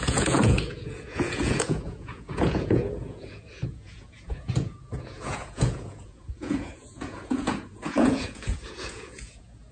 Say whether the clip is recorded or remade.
remade